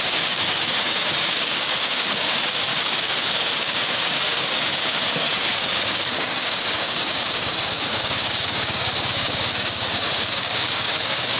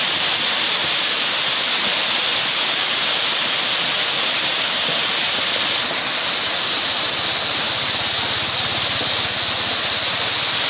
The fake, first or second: first